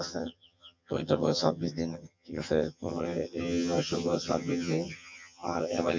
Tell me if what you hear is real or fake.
fake